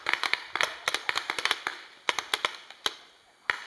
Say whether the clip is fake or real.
real